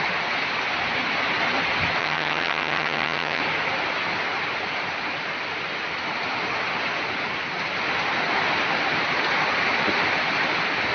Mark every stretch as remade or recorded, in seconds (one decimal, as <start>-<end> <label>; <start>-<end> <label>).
0.0-2.0 recorded; 2.0-3.4 remade; 3.4-10.9 recorded